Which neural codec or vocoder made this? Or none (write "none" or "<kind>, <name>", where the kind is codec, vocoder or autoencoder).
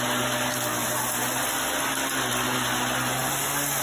none